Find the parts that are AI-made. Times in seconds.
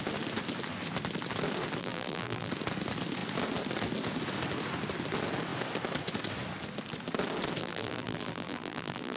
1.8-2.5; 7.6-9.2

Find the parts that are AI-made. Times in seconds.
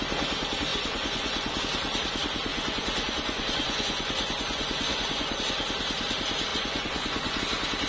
0.7-1.6; 2.5-5.4; 6.5-7.4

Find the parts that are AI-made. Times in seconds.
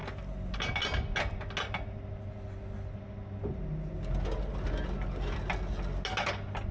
none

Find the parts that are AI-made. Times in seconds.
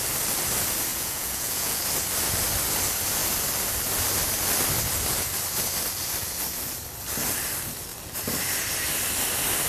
0.9-1.8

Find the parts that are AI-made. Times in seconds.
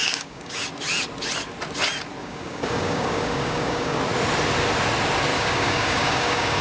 0.0-0.7; 2.2-4.0; 5.3-6.6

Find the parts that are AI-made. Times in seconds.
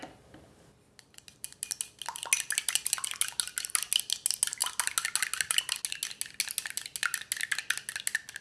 none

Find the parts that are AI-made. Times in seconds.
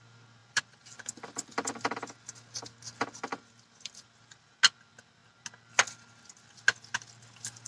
0.4-1.7; 3.3-4.5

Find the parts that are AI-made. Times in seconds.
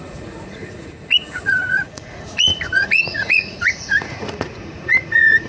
0.0-5.5